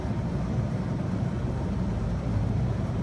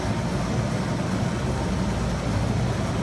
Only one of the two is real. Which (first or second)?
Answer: second